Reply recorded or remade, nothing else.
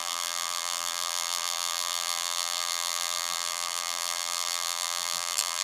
remade